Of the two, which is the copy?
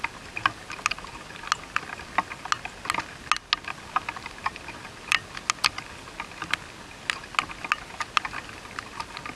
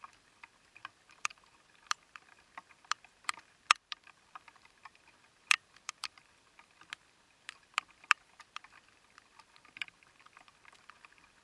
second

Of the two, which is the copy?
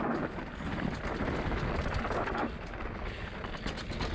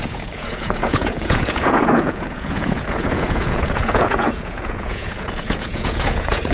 second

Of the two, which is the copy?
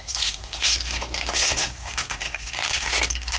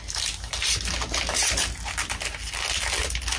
first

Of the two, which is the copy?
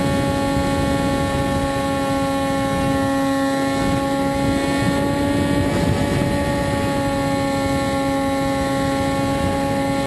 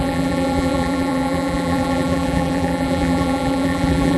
second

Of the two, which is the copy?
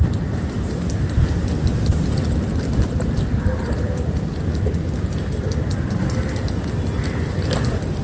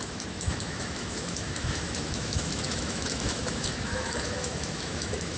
second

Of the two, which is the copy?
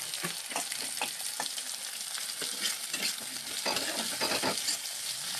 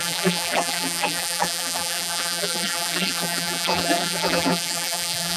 second